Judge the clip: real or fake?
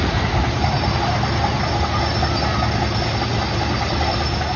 real